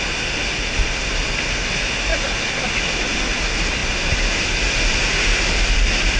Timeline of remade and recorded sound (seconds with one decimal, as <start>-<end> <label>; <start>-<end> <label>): 0.0-6.2 recorded